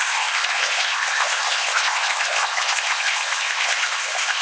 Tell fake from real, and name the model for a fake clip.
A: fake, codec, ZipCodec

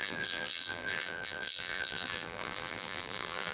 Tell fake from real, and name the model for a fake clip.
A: fake, vocoder, BigVGAN v2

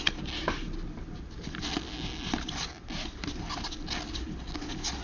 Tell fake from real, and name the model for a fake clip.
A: real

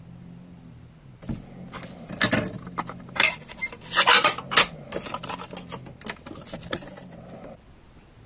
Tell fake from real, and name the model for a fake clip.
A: real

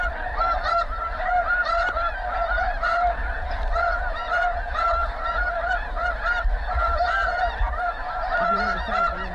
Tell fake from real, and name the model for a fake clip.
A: fake, vocoder, BigVGAN v2